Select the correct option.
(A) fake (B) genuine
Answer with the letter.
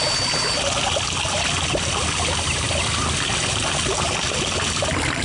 B